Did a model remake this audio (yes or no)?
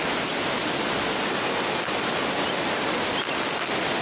no